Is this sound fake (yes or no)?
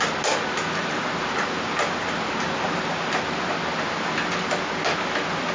no